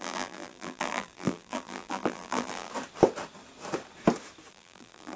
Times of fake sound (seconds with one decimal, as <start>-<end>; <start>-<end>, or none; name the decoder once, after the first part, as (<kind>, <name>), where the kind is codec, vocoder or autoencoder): 0.0-2.7 (vocoder, BigVGAN v2); 4.5-5.2

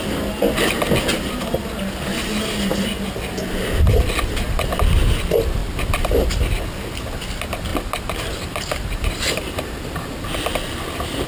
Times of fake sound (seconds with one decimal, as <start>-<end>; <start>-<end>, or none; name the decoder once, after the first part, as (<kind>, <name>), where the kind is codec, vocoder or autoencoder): 7.7-9.7 (vocoder, BigVGAN v2)

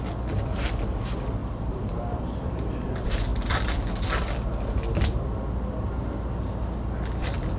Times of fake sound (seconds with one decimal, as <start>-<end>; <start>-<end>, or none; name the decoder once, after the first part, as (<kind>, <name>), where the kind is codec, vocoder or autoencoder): 1.4-2.9 (vocoder, BigVGAN v2)

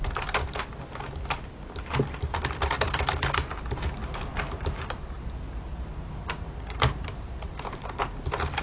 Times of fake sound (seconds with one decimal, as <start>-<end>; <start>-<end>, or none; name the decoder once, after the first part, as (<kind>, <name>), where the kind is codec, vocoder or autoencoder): 4.3-8.0 (vocoder, BigVGAN v2)

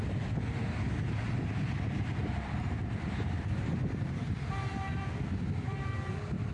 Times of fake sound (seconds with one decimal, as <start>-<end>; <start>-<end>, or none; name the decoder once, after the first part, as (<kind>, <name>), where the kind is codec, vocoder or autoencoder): 2.2-5.0 (vocoder, BigVGAN v2)

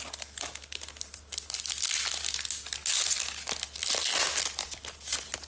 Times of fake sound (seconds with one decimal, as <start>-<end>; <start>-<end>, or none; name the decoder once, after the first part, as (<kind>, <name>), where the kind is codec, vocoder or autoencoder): none

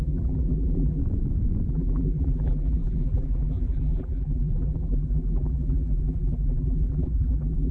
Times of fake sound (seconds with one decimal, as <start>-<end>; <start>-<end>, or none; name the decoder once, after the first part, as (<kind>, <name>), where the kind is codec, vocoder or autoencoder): 0.0-1.0 (vocoder, BigVGAN v2); 1.7-7.7